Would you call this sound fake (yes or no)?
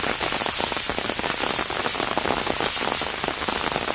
no